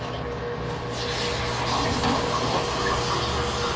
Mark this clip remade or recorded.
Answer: recorded